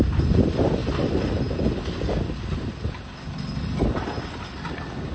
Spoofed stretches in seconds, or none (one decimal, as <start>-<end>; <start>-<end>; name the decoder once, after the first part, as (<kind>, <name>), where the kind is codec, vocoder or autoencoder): none